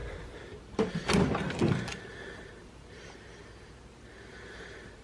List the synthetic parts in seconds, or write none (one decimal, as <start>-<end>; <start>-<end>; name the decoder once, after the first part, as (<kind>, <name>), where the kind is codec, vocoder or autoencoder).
1.9-5.0 (vocoder, BigVGAN v2)